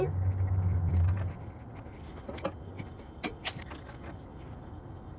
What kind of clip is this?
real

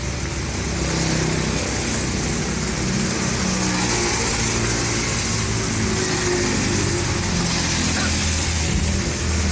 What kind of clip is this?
real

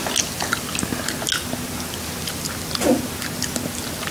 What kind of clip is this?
real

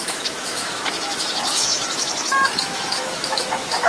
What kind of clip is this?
fake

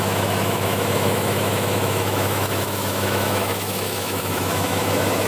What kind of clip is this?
fake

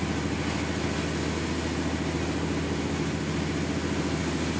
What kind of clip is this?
real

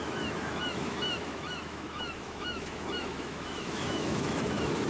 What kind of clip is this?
fake